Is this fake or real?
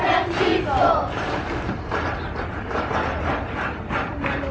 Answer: real